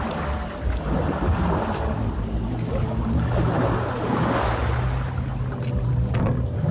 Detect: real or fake real